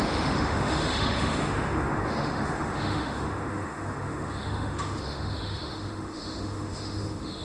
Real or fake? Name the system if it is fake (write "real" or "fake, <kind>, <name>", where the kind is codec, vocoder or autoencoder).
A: fake, autoencoder, DAC-VAE